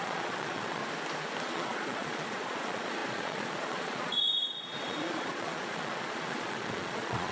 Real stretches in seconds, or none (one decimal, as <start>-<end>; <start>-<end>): 0.8-1.4